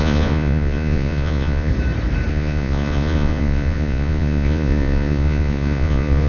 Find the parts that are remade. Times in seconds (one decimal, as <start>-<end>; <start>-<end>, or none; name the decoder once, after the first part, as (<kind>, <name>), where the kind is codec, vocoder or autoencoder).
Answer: 0.0-1.7 (vocoder, Vocos); 2.3-6.3